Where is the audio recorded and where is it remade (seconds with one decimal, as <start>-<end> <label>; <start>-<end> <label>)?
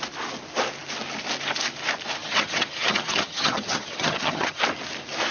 0.0-2.2 recorded; 2.2-4.6 remade; 4.6-5.3 recorded